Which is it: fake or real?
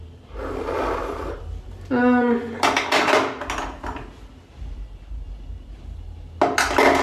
real